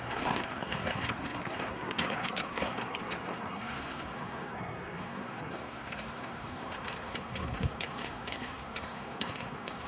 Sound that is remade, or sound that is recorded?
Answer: remade